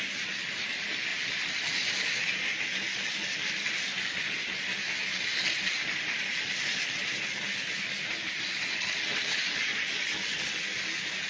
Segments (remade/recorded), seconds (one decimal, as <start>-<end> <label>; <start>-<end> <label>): 0.0-11.3 recorded